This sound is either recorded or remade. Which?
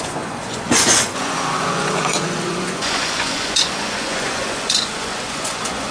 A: remade